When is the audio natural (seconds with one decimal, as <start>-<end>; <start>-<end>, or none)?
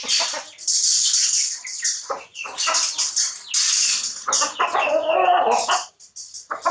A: 0.0-6.7